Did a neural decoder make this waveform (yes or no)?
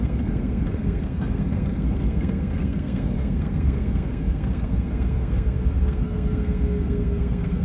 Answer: yes